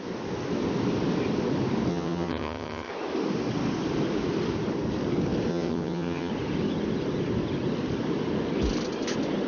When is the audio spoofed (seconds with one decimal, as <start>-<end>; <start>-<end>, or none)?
1.9-2.9; 5.5-6.3